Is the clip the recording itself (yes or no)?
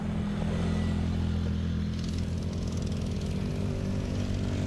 yes